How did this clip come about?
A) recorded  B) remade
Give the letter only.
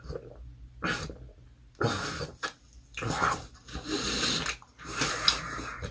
A